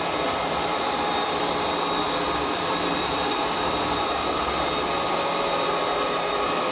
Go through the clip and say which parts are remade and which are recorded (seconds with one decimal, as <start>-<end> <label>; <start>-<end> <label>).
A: 0.0-0.4 recorded; 0.4-4.4 remade; 4.4-6.7 recorded